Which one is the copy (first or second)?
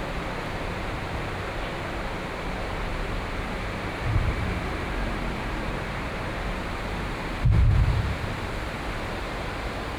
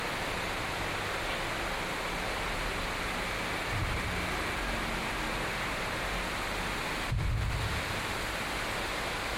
first